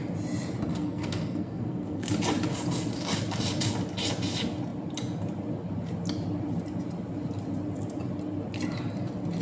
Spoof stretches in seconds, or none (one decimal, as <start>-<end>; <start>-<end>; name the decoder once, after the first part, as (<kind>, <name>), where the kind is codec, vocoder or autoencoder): 0.7-2.1 (codec, SNAC)